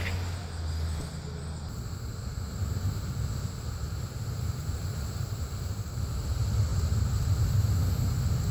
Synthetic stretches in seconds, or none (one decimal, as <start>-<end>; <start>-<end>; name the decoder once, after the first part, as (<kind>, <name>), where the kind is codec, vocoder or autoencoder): none